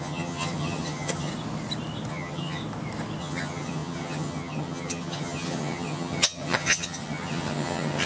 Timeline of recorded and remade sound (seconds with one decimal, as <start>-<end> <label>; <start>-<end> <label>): 0.0-1.3 remade; 1.3-2.1 recorded; 2.1-2.6 remade; 2.6-3.2 recorded; 3.2-8.1 remade

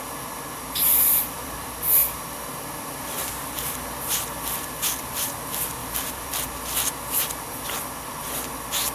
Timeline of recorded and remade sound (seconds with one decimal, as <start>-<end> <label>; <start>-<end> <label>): 0.0-0.9 recorded; 0.9-5.3 remade; 5.3-5.8 recorded; 5.8-6.4 remade; 6.4-8.9 recorded

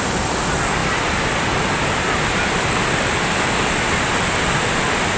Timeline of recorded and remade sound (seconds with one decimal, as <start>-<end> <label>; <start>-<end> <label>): 0.0-5.2 recorded

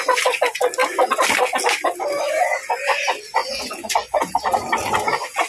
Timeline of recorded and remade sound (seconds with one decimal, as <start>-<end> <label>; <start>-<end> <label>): 0.0-3.4 recorded; 3.4-4.2 remade; 4.2-5.5 recorded

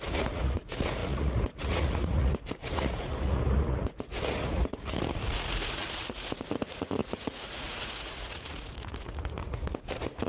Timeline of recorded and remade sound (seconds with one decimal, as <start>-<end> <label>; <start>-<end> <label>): 0.0-10.3 remade